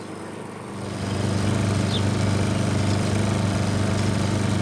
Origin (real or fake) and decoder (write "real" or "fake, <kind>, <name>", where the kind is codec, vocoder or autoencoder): real